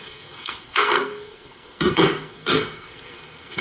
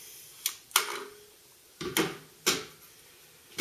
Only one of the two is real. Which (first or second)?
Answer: second